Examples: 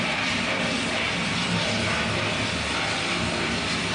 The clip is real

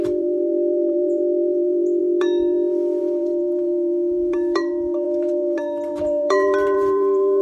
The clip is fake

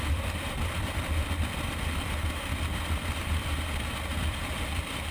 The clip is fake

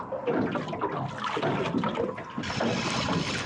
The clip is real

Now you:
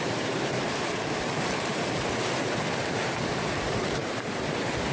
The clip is fake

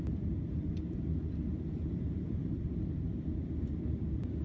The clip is fake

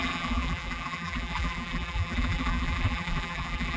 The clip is fake